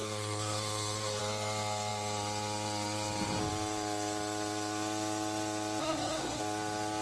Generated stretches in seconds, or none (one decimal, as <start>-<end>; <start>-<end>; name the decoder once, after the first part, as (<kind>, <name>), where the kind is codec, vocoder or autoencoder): 0.0-1.2 (codec, SNAC); 5.8-6.4